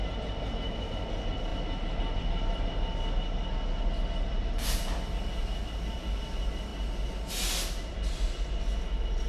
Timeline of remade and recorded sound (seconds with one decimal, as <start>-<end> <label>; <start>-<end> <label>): 0.0-9.3 recorded

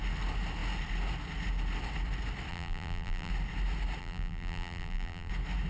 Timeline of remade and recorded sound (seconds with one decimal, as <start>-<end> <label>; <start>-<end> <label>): 0.0-2.5 recorded; 2.5-3.3 remade; 3.3-4.0 recorded; 4.0-5.3 remade; 5.3-5.7 recorded

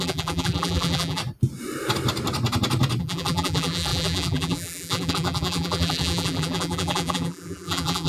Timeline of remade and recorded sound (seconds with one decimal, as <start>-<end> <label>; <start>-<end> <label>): 0.0-1.2 remade; 1.2-3.0 recorded; 3.0-8.1 remade

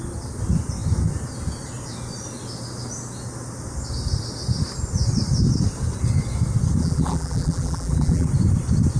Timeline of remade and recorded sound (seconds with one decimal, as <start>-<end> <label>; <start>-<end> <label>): 0.0-6.8 recorded; 6.8-8.3 remade; 8.3-9.0 recorded

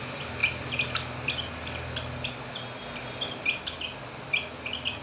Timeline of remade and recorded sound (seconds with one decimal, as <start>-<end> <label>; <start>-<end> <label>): 0.0-5.0 recorded

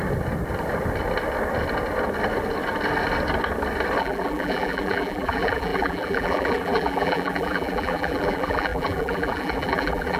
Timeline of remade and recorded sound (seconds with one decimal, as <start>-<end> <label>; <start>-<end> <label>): 0.0-4.0 recorded; 4.0-10.2 remade

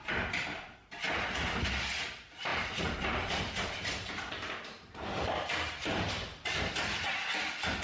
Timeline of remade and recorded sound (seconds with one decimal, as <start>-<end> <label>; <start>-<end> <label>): 0.0-2.5 recorded; 2.5-7.1 remade; 7.1-7.8 recorded

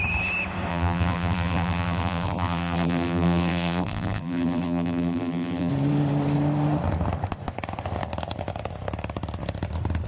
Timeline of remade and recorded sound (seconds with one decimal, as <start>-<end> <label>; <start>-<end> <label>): 0.0-0.7 recorded; 0.7-5.7 remade; 5.7-10.1 recorded